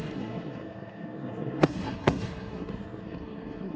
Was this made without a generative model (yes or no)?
no